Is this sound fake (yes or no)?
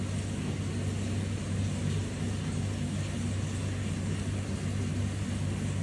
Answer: no